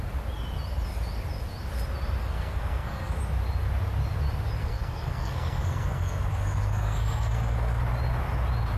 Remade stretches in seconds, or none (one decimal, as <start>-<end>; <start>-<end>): 2.2-3.2; 4.6-7.8